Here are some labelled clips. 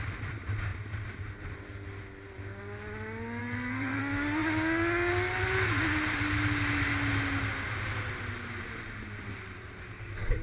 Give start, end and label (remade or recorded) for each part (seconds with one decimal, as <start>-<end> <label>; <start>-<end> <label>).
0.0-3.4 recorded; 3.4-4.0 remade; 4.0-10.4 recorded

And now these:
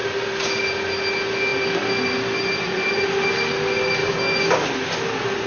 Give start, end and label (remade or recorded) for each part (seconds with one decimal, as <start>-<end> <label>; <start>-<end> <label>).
0.0-4.0 recorded; 4.0-4.5 remade; 4.5-5.5 recorded

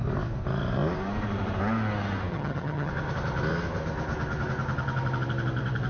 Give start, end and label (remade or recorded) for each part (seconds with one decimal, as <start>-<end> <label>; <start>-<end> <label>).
0.0-2.3 recorded; 2.3-2.9 remade; 2.9-5.9 recorded

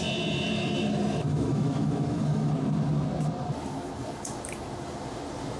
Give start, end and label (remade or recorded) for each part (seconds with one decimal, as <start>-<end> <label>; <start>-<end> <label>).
0.0-1.3 recorded; 1.3-2.5 remade; 2.5-5.6 recorded

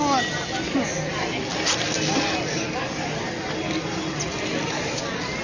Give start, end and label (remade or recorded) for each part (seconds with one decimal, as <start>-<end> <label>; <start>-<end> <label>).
0.0-5.4 recorded

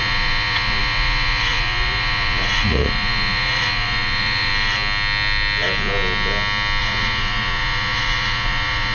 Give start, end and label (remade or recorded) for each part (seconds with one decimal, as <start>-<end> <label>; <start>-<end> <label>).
0.0-4.5 remade; 4.5-6.8 recorded; 6.8-8.9 remade

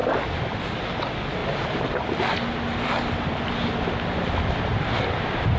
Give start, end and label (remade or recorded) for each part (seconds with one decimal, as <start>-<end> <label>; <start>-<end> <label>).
0.0-5.6 recorded

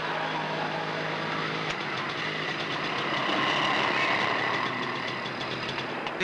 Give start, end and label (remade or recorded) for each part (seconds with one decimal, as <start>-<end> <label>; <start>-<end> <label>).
0.0-6.2 recorded